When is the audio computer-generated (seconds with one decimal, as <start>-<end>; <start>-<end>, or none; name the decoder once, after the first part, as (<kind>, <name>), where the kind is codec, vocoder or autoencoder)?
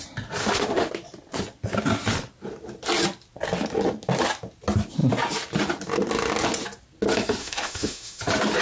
0.4-0.9 (autoencoder, DAC-VAE); 7.4-8.2